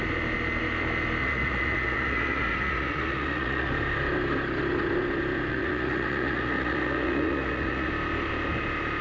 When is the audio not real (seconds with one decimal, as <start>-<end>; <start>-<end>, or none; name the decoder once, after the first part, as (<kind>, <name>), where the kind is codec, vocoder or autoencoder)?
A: 1.2-3.7 (vocoder, Vocos); 5.5-7.9